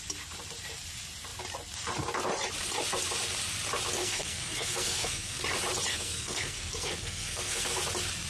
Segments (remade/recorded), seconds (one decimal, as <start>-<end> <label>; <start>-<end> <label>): 0.0-4.0 recorded; 4.0-5.4 remade; 5.4-5.9 recorded; 5.9-7.8 remade; 7.8-8.3 recorded